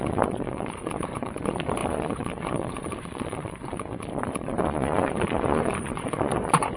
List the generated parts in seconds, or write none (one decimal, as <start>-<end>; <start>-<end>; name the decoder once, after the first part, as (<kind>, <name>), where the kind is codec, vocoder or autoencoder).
0.0-6.8 (vocoder, Vocos)